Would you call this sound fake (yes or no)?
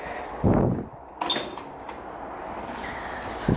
no